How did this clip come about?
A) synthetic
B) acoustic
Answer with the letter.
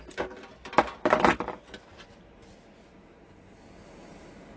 B